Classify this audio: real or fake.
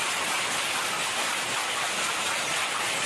real